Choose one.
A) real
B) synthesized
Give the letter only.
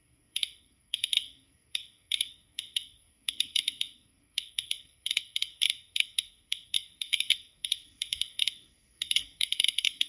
B